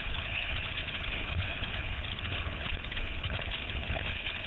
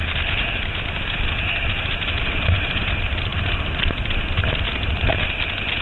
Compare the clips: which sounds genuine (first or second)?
second